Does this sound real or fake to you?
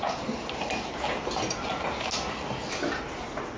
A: real